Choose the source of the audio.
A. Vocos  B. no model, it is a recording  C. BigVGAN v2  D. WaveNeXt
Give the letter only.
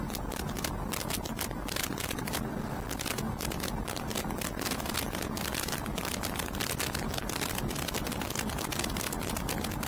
B